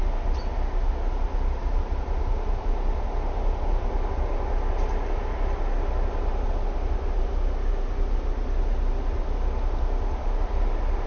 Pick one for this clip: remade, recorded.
recorded